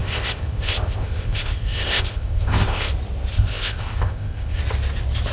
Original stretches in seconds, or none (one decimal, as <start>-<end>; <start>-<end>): 2.9-3.3; 4.6-5.3